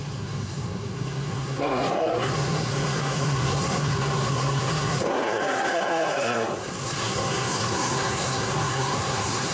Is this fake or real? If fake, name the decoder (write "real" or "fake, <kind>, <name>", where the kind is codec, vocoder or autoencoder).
fake, codec, SNAC